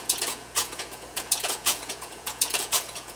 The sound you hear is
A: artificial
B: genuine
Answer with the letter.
A